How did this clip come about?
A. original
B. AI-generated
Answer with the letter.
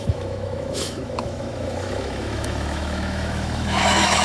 B